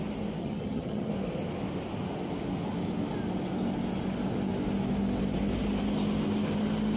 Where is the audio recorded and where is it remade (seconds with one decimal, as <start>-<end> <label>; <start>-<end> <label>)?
0.0-0.4 recorded; 0.4-1.1 remade; 1.1-7.0 recorded